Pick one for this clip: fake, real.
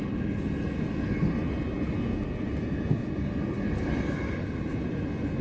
real